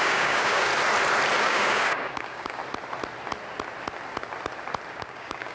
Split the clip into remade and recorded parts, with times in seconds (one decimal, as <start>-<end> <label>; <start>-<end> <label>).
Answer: 0.0-0.7 remade; 0.7-1.4 recorded; 1.4-2.6 remade; 2.6-4.9 recorded; 4.9-5.5 remade